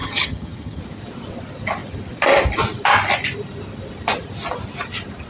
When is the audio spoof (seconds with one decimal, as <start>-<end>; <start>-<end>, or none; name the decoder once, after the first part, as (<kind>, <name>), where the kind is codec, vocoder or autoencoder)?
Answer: 0.0-0.8 (vocoder, HiFi-GAN)